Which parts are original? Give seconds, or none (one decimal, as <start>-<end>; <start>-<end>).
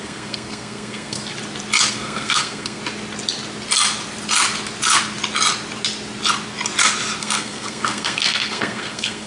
1.2-1.9; 2.8-7.2